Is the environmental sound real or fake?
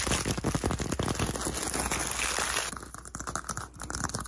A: real